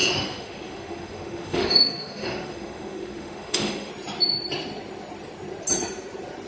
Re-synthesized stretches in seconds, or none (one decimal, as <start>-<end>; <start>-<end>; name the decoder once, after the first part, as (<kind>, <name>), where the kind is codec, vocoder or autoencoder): 0.0-3.9 (autoencoder, DAC-VAE)